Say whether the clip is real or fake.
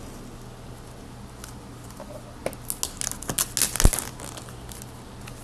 real